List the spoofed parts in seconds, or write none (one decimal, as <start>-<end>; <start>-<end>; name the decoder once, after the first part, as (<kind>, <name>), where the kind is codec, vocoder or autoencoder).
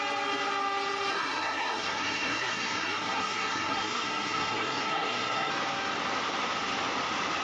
1.1-5.5 (codec, SNAC)